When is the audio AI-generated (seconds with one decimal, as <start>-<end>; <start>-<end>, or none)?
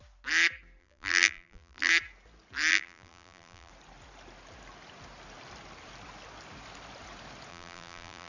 0.8-1.9; 2.7-3.7; 7.5-8.3